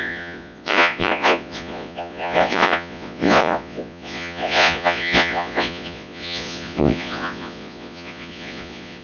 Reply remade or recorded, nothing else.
remade